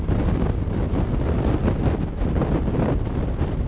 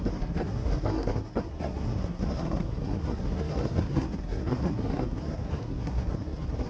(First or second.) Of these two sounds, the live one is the first